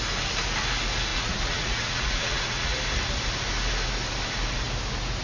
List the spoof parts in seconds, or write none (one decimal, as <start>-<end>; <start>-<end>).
1.1-2.8